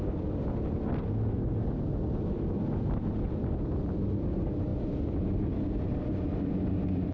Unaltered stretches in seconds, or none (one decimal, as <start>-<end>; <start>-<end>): 0.0-7.1